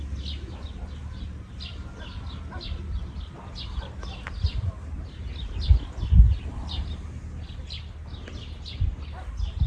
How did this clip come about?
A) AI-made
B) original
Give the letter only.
B